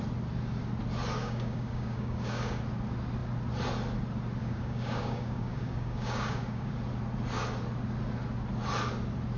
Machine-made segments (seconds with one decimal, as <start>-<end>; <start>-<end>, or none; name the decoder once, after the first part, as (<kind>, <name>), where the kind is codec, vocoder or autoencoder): 1.2-2.6 (codec, DAC); 4.4-6.7